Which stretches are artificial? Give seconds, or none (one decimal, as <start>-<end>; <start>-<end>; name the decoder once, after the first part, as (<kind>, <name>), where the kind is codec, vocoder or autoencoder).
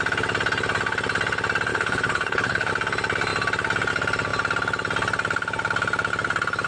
1.7-2.7 (codec, HILCodec)